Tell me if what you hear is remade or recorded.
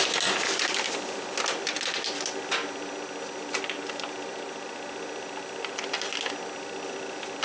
recorded